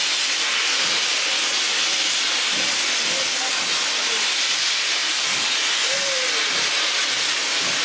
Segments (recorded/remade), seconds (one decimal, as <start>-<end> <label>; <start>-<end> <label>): 0.0-7.8 recorded